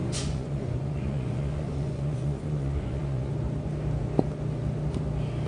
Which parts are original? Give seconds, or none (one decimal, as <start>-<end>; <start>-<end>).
3.3-5.5